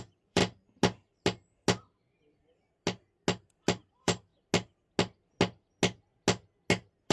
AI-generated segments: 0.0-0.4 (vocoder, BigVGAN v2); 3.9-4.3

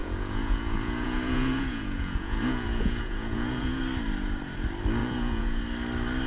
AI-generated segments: 0.0-3.8 (vocoder, Vocos); 5.0-5.6